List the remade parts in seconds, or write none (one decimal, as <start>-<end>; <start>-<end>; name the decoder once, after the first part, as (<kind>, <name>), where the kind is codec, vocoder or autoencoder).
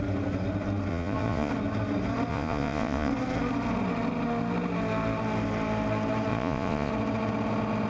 0.9-1.5 (vocoder, Vocos); 2.3-3.1; 6.3-6.9